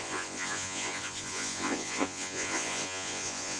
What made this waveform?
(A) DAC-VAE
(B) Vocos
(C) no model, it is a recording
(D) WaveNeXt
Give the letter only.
B